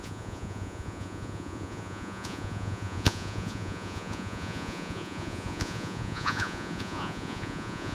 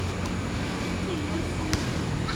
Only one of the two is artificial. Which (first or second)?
first